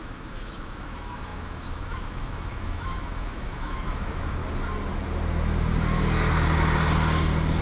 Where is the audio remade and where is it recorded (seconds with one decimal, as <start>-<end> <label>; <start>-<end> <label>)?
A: 0.0-4.4 remade; 4.4-7.6 recorded